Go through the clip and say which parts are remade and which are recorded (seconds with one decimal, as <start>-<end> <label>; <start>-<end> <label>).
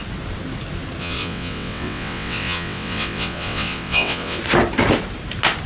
0.0-1.0 recorded; 1.0-4.4 remade; 4.4-5.7 recorded